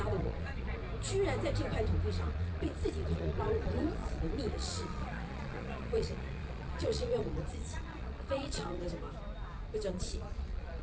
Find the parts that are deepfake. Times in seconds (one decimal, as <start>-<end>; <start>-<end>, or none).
0.0-0.8; 2.1-8.8; 9.9-10.8